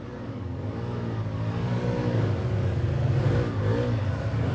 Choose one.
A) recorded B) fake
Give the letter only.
B